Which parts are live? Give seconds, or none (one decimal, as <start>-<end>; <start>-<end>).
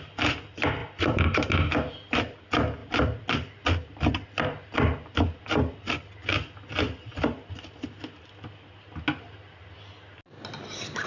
0.0-0.8; 1.5-11.1